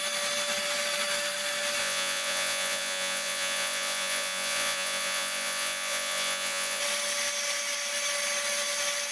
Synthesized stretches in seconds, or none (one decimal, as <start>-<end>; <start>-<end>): 1.8-6.8